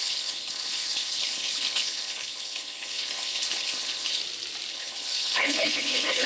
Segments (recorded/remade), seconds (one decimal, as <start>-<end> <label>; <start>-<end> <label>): 0.0-4.2 remade; 4.2-4.7 recorded; 4.7-6.3 remade